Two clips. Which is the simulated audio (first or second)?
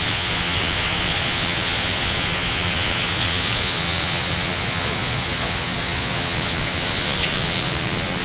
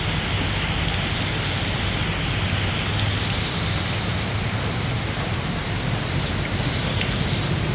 first